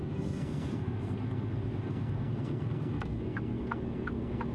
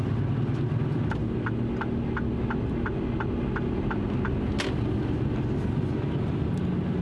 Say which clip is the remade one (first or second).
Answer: first